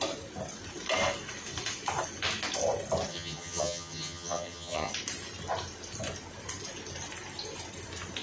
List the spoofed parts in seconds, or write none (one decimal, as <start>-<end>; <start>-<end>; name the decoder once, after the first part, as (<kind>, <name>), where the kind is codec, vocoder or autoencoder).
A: 3.1-4.9 (vocoder, HiFi-GAN)